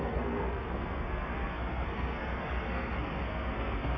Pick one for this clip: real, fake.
fake